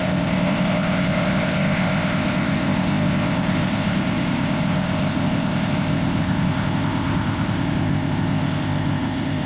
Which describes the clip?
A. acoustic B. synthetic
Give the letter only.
B